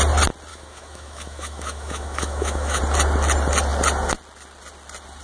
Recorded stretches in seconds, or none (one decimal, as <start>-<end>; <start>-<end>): 0.0-0.5; 2.8-5.2